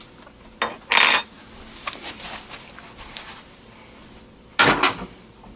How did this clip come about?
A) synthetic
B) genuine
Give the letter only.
B